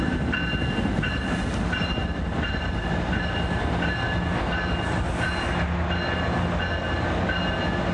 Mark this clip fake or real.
real